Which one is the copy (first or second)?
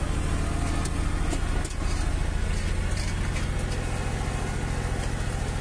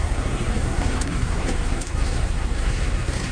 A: second